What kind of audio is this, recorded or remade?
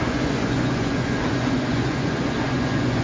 remade